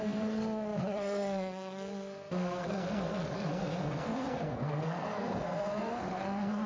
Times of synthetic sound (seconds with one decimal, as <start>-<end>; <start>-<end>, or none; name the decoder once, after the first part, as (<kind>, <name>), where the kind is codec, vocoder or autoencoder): 0.0-6.7 (codec, SNAC)